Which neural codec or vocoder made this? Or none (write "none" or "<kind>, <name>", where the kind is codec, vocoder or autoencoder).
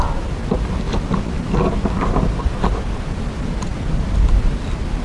none